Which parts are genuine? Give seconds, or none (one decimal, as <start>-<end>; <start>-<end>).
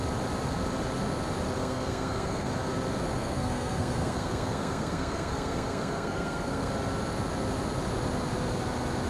0.0-1.6; 2.5-3.2; 6.7-9.1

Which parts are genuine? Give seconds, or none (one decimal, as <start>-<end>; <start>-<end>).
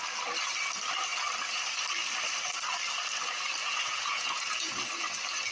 0.0-3.6; 4.7-5.5